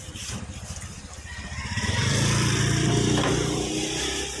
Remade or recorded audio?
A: remade